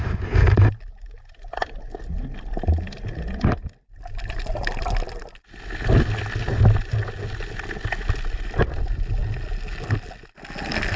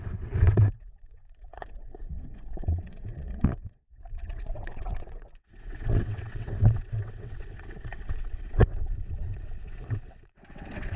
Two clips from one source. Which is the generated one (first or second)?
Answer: second